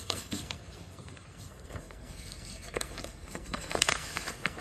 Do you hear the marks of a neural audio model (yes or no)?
yes